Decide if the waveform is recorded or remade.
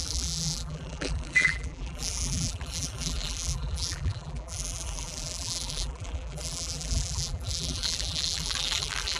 remade